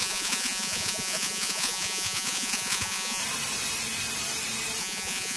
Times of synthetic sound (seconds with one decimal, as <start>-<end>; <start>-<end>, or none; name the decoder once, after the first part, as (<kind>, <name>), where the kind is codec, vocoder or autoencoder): 0.0-3.2 (vocoder, Vocos); 4.8-5.4

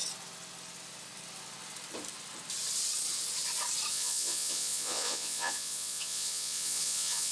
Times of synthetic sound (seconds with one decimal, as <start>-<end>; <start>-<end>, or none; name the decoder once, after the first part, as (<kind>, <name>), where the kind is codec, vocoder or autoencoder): 3.9-7.3 (vocoder, Vocos)